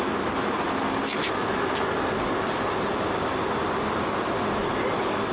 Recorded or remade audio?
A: recorded